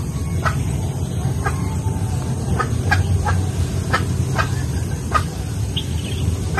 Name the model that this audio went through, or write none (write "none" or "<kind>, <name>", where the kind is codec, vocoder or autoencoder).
none